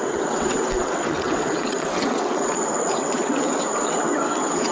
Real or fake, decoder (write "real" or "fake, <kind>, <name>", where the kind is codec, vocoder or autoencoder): fake, vocoder, WaveNeXt